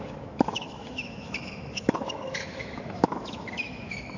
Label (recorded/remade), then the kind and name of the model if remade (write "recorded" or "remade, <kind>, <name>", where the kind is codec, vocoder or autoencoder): remade, autoencoder, DAC-VAE